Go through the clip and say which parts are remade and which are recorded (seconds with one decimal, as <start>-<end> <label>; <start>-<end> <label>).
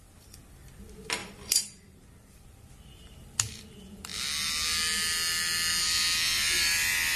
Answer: 0.0-4.1 remade; 4.1-5.8 recorded; 5.8-7.2 remade